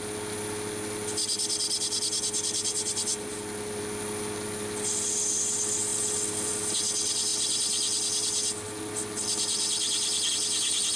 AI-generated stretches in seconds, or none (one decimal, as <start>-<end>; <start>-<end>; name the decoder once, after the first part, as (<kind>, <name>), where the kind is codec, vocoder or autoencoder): none